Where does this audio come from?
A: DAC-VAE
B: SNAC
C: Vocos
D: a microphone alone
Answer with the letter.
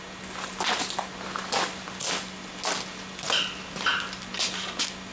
D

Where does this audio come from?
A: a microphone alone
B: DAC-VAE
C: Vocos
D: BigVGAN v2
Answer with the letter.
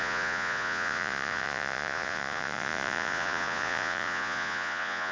C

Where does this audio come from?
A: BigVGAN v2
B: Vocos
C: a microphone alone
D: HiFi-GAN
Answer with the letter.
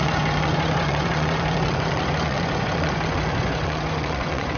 B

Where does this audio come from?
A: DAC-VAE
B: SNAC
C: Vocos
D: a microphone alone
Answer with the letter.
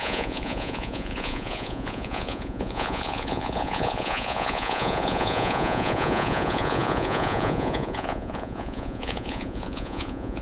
C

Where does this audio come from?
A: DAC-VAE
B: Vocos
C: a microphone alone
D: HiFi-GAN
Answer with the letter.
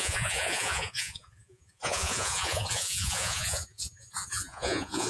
B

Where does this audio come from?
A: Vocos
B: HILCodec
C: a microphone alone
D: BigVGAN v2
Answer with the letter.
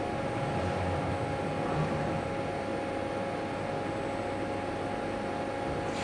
C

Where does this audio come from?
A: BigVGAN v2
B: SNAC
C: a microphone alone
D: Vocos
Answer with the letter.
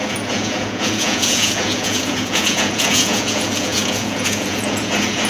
D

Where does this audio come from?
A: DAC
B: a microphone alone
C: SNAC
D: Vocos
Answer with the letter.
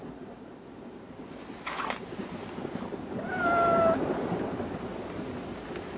B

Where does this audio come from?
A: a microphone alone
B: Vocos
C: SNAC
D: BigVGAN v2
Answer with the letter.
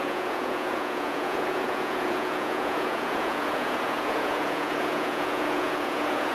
B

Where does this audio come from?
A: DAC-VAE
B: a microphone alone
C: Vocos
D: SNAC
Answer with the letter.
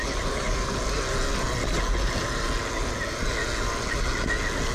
B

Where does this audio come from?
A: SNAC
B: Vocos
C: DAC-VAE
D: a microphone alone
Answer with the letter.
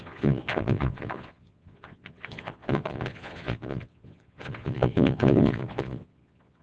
B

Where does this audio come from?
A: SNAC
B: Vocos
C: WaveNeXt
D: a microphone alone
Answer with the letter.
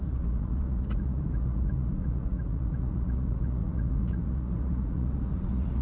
B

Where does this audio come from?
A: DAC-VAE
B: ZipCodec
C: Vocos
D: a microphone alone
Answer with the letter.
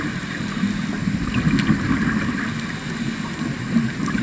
D